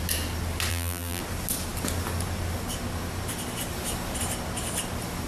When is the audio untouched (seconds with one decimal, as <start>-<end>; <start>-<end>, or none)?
0.0-0.7; 1.2-5.3